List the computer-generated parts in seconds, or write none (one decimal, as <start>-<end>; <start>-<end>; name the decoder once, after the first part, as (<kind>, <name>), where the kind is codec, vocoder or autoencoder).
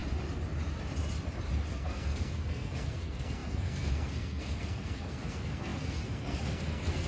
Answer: 1.7-7.1 (codec, SNAC)